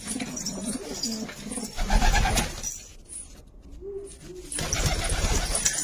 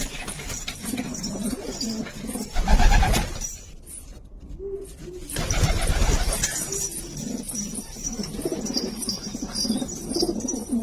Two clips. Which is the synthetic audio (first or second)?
second